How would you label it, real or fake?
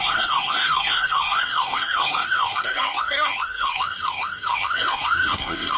fake